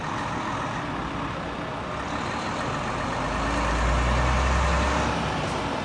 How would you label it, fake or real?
real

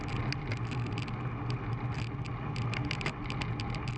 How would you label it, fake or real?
real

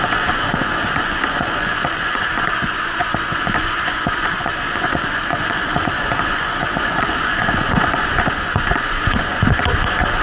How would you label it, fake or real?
fake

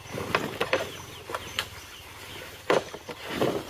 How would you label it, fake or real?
fake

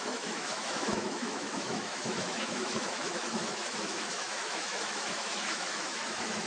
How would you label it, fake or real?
fake